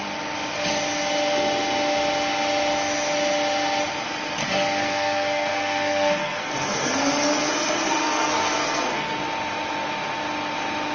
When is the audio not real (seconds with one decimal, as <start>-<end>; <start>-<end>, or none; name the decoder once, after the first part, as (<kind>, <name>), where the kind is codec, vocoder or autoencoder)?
4.4-9.2 (codec, SNAC)